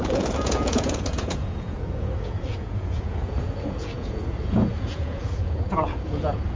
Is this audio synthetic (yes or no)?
yes